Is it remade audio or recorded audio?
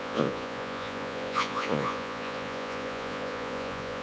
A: remade